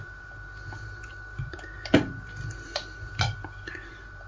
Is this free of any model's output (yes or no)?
no